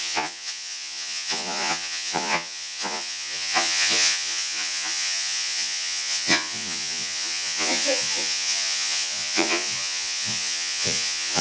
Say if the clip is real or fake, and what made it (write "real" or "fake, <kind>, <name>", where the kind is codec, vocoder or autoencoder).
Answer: fake, vocoder, Vocos